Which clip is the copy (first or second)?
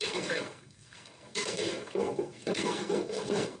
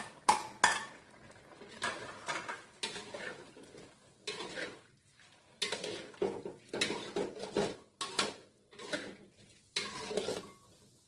first